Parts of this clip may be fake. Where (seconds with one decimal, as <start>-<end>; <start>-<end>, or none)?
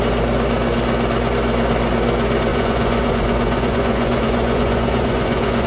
2.5-5.7